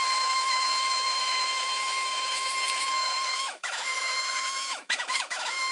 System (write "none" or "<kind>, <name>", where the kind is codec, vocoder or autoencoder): autoencoder, DAC-VAE